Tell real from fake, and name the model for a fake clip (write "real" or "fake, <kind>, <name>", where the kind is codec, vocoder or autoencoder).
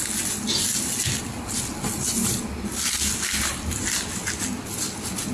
real